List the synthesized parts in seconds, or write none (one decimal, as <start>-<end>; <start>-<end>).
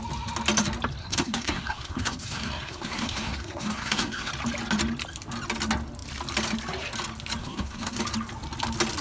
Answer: 1.0-4.3; 7.4-8.0